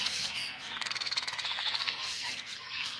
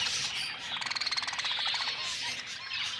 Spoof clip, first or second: first